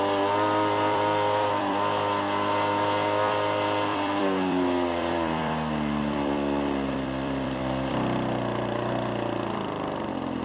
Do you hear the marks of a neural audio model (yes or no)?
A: yes